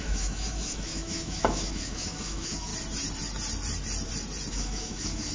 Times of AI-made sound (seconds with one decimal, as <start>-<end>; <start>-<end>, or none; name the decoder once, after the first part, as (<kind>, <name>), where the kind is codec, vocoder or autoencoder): 0.0-2.7 (autoencoder, DAC-VAE); 4.5-5.3